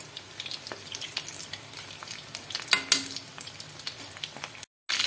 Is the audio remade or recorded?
recorded